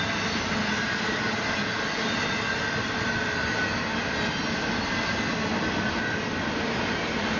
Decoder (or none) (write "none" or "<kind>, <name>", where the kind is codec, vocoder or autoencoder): none